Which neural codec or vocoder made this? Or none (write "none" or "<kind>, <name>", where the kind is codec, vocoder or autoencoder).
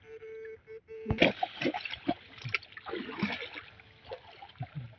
none